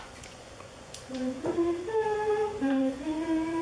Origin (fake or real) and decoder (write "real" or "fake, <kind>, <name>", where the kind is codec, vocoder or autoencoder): fake, vocoder, Vocos